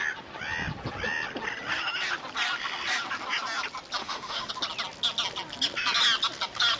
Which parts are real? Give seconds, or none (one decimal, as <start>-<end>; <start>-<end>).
0.0-4.0; 4.5-6.8